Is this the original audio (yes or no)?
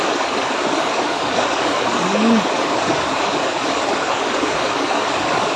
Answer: no